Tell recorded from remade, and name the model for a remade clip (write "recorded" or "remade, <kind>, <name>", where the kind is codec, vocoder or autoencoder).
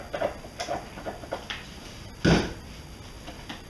recorded